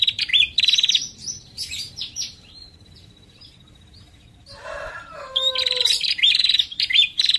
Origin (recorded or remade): remade